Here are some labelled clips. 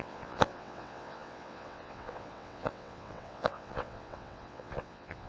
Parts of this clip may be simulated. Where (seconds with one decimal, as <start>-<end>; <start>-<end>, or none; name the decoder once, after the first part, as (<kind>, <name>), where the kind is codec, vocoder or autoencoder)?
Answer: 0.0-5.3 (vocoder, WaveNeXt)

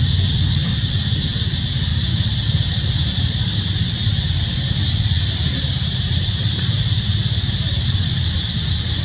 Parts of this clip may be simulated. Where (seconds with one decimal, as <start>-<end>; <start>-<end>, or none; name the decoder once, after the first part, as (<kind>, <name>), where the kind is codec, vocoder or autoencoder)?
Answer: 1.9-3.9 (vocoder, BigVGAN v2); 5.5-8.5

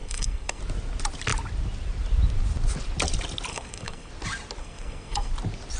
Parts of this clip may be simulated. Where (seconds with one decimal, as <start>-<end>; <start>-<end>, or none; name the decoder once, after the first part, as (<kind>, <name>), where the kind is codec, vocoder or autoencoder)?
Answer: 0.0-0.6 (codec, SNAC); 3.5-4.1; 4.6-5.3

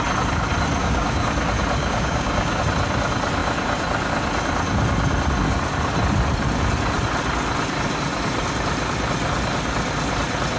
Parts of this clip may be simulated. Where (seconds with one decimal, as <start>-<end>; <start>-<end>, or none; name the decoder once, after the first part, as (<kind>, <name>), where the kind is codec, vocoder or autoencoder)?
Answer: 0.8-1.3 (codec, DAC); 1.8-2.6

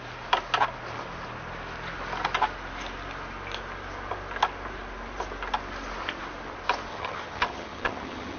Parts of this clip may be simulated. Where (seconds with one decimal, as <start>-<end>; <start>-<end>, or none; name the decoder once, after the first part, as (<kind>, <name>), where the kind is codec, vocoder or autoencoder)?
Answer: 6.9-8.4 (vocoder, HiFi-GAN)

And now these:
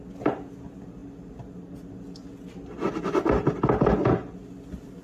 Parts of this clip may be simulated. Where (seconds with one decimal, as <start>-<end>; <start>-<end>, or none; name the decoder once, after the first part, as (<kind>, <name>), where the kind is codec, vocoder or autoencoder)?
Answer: none